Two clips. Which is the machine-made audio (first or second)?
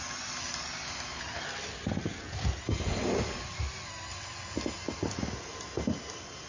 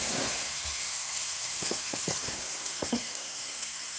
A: second